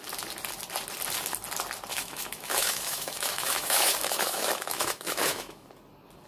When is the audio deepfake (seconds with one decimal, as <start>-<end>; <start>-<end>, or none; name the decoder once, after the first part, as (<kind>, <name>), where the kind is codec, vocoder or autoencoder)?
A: 1.9-5.7 (autoencoder, DAC-VAE)